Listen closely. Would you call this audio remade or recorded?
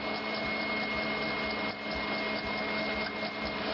recorded